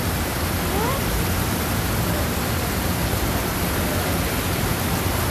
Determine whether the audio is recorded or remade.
recorded